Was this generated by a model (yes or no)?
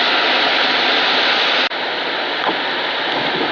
no